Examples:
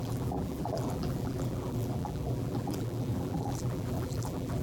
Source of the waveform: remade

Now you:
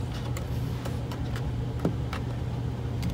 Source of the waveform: recorded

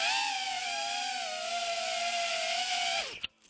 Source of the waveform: recorded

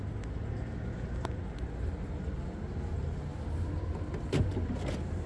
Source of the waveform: recorded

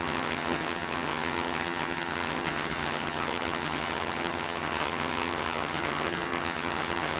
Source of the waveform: remade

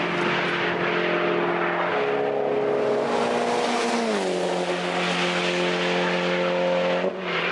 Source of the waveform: recorded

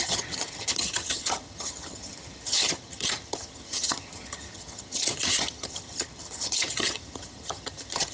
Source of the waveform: remade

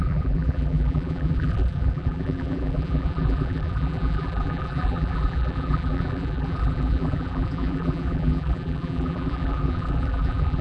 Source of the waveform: remade